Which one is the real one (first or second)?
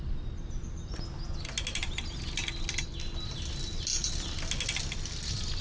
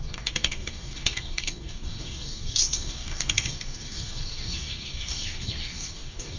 first